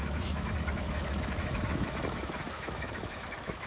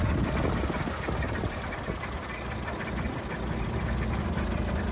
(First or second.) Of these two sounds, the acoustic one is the second